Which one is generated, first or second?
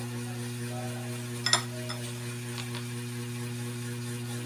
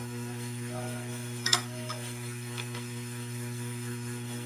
second